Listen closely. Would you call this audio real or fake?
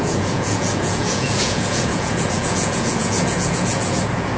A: fake